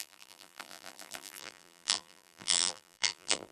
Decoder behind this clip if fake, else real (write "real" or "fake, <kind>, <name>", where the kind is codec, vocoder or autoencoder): fake, vocoder, BigVGAN v2